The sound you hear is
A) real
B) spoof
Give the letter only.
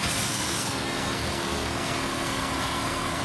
B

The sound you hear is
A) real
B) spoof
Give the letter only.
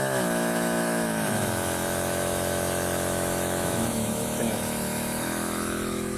B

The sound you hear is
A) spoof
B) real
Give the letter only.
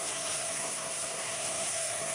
A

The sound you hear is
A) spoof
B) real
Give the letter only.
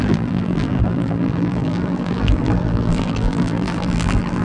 A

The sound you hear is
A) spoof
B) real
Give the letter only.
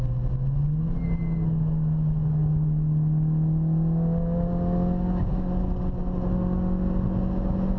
B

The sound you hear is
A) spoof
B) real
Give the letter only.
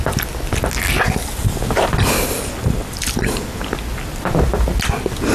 B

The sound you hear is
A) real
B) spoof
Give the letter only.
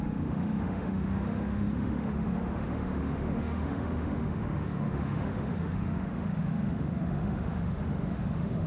B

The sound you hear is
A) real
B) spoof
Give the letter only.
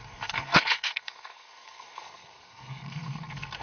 B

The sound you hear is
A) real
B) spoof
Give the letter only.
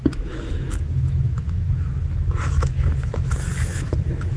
B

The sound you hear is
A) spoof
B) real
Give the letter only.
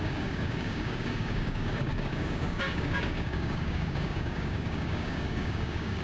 A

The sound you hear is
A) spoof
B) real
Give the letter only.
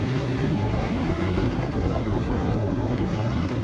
A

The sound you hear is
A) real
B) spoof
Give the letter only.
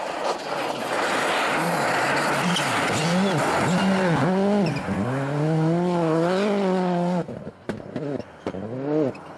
A